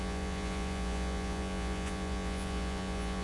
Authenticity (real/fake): fake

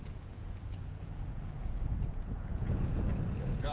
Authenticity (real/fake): fake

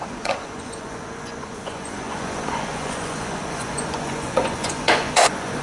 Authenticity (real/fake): fake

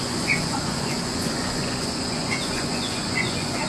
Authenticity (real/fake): fake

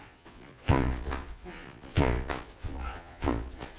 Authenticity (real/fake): fake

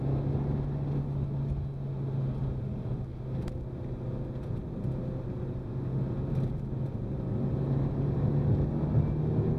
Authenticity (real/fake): real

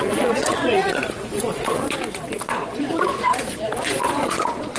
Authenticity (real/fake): fake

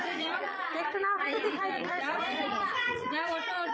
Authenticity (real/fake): fake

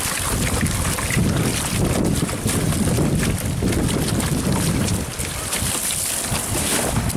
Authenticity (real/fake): real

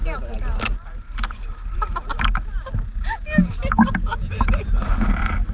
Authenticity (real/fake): real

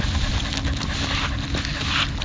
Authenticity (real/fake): real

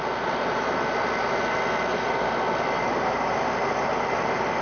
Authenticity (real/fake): real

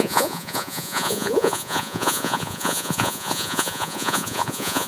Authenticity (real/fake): fake